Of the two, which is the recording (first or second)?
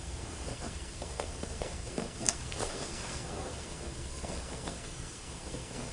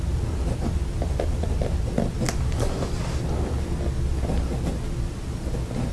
second